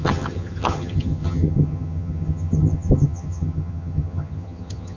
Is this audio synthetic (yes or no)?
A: yes